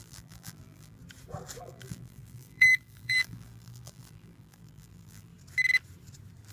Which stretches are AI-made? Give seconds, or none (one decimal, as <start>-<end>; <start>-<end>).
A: 0.0-1.0; 1.6-5.3